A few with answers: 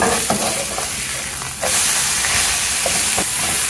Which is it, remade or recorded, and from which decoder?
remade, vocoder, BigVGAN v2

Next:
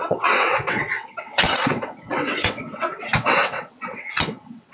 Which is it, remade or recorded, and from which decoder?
remade, vocoder, WaveNeXt